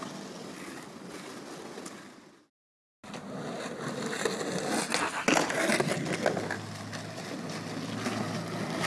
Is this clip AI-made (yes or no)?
no